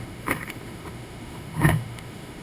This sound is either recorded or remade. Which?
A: remade